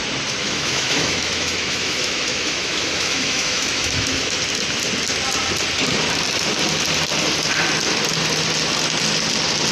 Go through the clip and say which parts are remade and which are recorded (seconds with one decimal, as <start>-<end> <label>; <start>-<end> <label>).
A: 0.0-0.4 recorded; 0.4-4.4 remade; 4.4-9.7 recorded